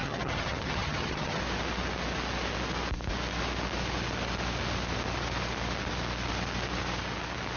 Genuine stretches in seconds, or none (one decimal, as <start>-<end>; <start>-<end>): 1.4-7.6